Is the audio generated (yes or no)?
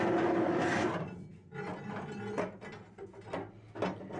no